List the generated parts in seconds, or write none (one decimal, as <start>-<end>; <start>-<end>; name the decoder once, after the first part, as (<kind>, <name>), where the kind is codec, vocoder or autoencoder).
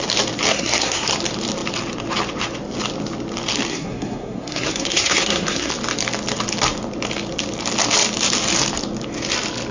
0.5-1.1 (codec, SNAC); 3.7-5.7